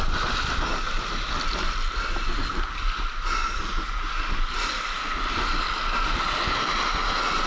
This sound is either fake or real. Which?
real